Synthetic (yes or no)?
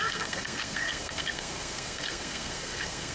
yes